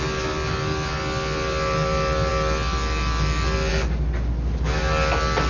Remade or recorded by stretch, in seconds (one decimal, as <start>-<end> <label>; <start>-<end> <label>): 0.0-5.5 recorded